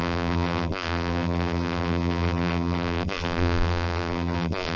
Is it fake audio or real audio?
fake